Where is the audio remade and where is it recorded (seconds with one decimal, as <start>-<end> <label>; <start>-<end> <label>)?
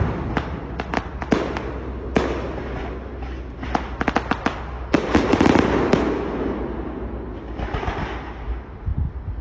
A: 0.0-9.4 recorded